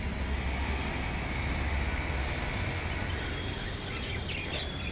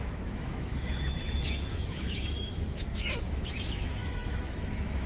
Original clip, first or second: first